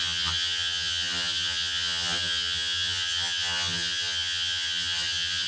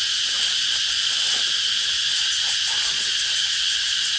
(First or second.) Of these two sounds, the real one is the second